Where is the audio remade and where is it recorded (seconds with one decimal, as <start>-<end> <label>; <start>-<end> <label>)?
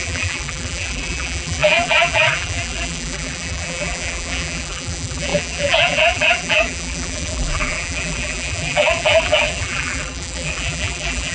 0.0-11.3 remade